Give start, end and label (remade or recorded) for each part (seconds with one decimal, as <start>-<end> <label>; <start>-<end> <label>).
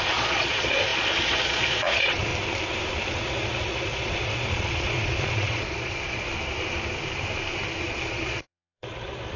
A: 0.0-2.3 remade; 2.3-3.1 recorded; 3.1-6.3 remade; 6.3-7.8 recorded; 7.8-9.4 remade